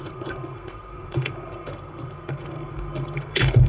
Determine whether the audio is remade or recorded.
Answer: remade